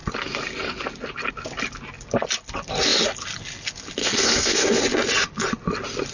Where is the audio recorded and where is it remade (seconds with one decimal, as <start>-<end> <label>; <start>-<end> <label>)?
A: 0.0-4.0 recorded; 4.0-4.8 remade; 4.8-6.1 recorded